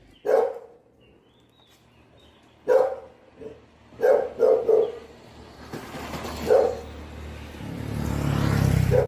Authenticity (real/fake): real